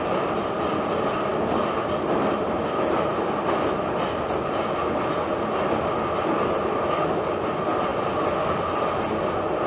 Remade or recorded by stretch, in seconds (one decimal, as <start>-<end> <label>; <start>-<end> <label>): 0.0-9.7 recorded